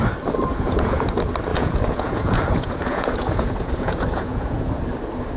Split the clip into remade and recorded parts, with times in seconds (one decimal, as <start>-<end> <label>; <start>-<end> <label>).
0.0-0.5 recorded; 0.5-1.1 remade; 1.1-1.5 recorded; 1.5-4.7 remade; 4.7-5.4 recorded